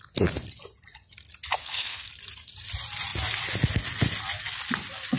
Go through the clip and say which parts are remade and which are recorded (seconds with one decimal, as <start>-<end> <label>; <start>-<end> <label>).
0.0-1.6 recorded; 1.6-2.1 remade; 2.1-5.2 recorded

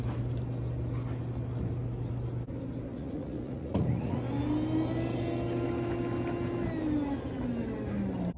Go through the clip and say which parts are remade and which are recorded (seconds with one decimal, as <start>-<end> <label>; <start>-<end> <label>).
0.0-2.9 recorded; 2.9-4.2 remade; 4.2-8.4 recorded

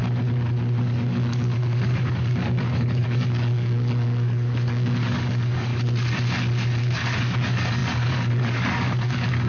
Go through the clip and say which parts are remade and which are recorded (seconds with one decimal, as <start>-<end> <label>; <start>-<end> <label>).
0.0-0.8 recorded; 0.8-5.7 remade; 5.7-7.2 recorded; 7.2-9.5 remade

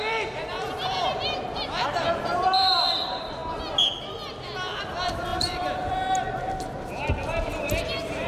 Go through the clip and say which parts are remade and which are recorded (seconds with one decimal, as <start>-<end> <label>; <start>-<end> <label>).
0.0-3.4 remade; 3.4-4.8 recorded; 4.8-8.3 remade

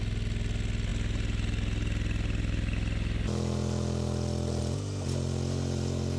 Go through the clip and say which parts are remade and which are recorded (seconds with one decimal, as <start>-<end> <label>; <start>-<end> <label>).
0.0-6.2 recorded

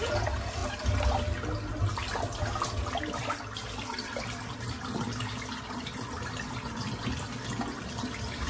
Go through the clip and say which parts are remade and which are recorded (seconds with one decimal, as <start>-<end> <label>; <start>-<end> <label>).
0.0-8.5 recorded

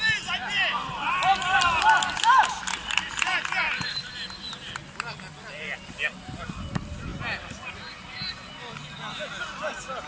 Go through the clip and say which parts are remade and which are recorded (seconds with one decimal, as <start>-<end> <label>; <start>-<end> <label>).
0.0-10.1 recorded

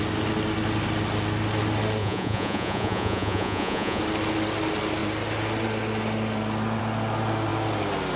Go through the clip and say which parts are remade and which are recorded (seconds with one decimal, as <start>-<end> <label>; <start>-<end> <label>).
0.0-2.0 recorded; 2.0-4.0 remade; 4.0-8.2 recorded